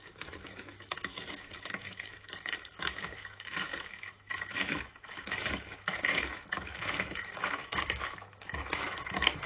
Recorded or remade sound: remade